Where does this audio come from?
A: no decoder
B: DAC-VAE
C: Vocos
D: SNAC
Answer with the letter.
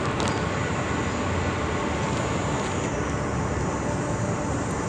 A